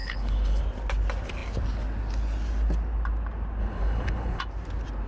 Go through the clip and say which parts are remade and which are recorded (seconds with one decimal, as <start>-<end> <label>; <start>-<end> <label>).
0.0-0.6 remade; 0.6-3.6 recorded; 3.6-4.4 remade; 4.4-5.1 recorded